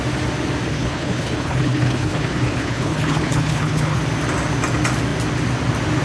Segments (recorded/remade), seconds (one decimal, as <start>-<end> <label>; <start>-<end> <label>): 0.0-0.7 recorded; 0.7-4.0 remade; 4.0-6.0 recorded